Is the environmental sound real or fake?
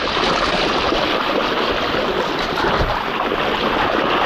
real